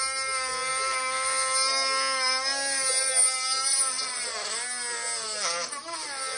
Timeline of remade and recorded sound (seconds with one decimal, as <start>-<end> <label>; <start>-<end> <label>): 0.0-6.4 recorded